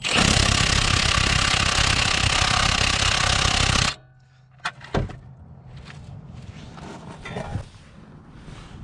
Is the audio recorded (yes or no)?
yes